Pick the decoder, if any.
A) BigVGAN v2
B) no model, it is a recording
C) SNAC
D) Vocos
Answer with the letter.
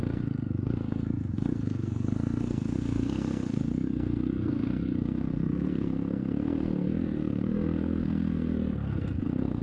C